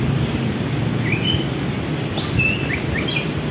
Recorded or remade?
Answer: recorded